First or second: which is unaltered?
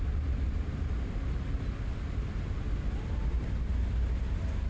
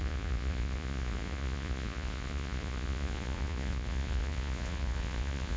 first